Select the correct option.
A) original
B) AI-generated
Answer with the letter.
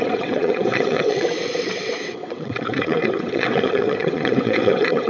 B